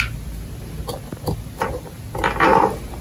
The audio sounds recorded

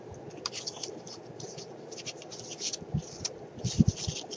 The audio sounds remade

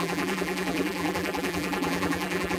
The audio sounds remade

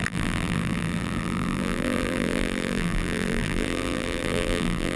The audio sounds remade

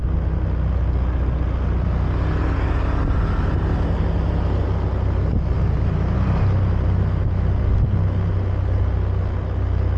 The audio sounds recorded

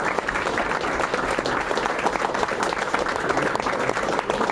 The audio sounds remade